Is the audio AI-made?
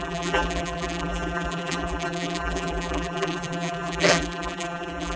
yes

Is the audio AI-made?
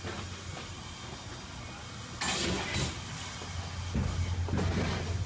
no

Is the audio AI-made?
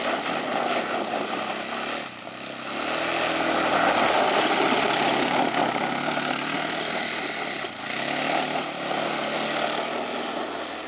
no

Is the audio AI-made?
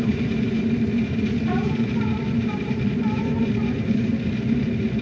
yes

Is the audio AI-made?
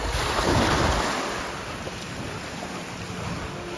no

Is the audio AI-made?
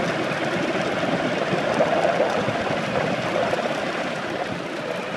yes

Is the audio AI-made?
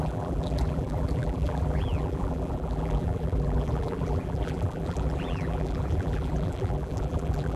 yes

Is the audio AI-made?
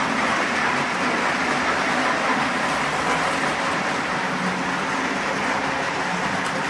no